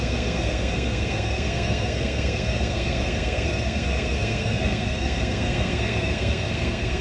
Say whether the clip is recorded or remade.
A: remade